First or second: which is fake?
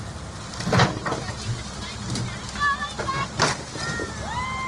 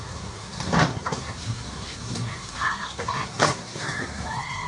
second